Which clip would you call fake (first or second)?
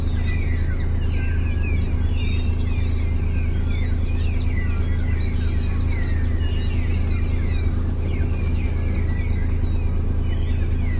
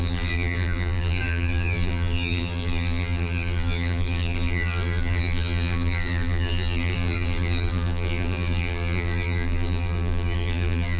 second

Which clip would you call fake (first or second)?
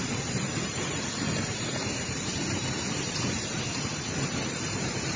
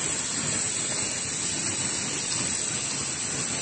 first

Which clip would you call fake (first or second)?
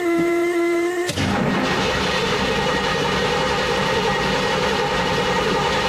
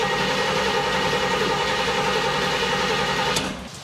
first